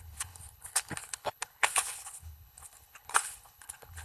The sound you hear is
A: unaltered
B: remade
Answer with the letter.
B